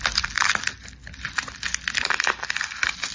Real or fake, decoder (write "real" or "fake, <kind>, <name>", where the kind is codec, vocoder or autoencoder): real